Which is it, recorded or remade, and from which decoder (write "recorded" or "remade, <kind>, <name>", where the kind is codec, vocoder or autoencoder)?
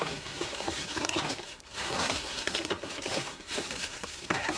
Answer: remade, codec, SNAC